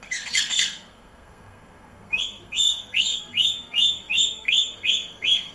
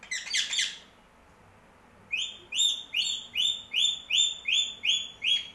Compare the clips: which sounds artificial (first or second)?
first